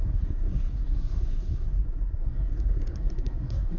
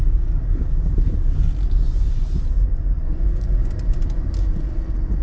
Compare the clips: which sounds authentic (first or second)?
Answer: second